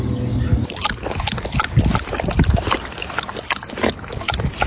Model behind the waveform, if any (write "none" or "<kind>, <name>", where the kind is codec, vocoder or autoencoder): none